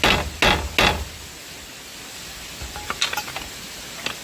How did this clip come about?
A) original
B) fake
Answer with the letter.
A